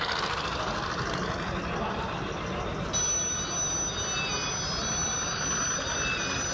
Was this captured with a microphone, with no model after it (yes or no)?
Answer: yes